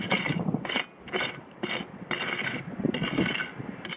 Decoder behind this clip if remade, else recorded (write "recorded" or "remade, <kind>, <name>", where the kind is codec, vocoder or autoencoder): recorded